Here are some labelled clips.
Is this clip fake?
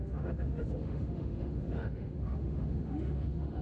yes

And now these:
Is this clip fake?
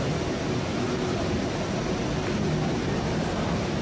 no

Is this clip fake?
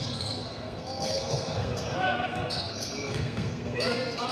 yes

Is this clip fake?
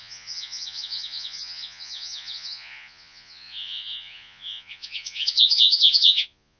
yes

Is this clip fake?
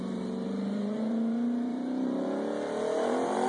yes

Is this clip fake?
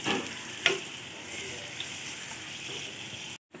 no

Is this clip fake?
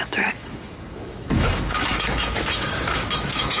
yes